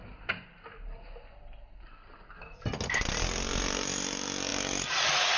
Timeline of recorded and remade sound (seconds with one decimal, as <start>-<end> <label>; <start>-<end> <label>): 0.0-5.4 recorded